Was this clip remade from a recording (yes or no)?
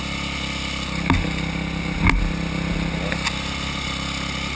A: no